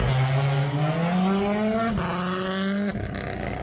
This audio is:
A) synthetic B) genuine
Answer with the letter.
B